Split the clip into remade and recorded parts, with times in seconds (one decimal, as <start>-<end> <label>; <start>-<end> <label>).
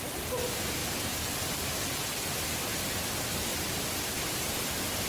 0.0-3.5 recorded; 3.5-4.3 remade; 4.3-5.1 recorded